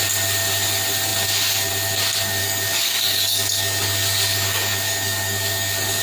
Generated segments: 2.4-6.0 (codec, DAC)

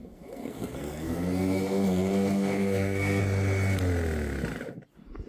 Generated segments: 0.0-3.2 (codec, SNAC)

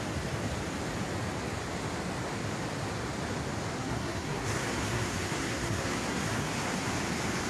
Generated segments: 3.8-6.9 (codec, SNAC)

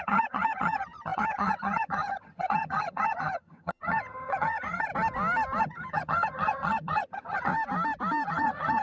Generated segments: 0.0-4.9 (vocoder, HiFi-GAN); 5.6-7.5; 8.3-8.8

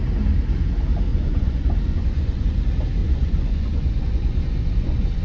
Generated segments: 1.1-2.6 (vocoder, Vocos); 3.0-5.2

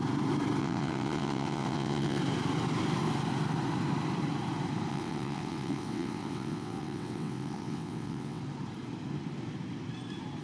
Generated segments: 0.6-2.2 (vocoder, WaveNeXt); 4.9-8.4